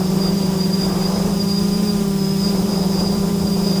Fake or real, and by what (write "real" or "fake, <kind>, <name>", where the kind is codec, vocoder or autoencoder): fake, vocoder, BigVGAN v2